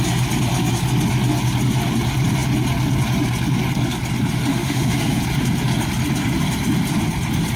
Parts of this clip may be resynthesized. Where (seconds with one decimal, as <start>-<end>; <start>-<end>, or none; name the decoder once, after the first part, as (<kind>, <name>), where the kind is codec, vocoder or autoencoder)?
4.5-5.2 (autoencoder, DAC-VAE)